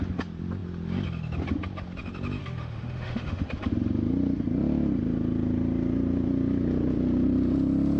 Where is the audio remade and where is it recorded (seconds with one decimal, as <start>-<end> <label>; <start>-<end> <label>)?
0.0-2.4 recorded; 2.4-3.4 remade; 3.4-8.0 recorded

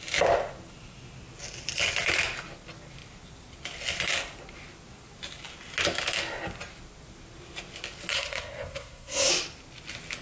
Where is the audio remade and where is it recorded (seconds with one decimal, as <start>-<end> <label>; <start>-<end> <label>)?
0.0-8.1 recorded; 8.1-9.3 remade; 9.3-10.2 recorded